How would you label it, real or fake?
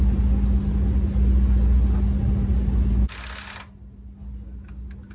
real